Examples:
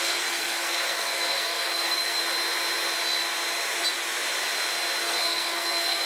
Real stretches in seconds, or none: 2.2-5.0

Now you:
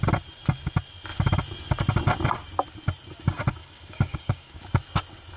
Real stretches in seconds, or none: 0.0-3.6; 4.6-5.4

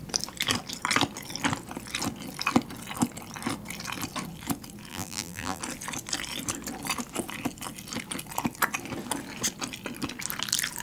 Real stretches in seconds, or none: 0.0-4.9; 5.6-10.8

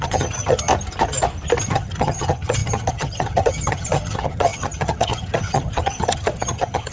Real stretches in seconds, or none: 0.7-1.7

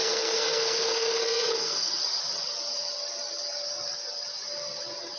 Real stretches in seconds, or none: 1.9-5.2

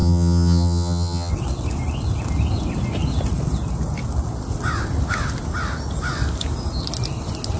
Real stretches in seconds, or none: 1.3-7.6

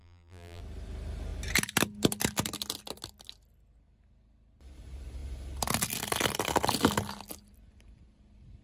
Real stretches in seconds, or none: 0.6-8.6

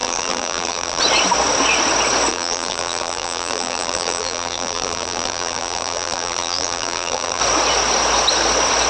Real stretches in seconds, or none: 1.0-2.3; 7.4-8.9